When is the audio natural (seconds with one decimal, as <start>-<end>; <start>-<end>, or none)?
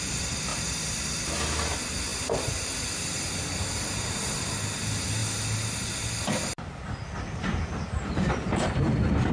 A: 0.0-9.3